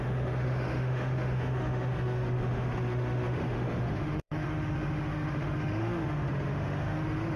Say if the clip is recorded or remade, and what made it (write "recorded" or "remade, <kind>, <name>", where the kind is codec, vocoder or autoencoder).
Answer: remade, autoencoder, DAC-VAE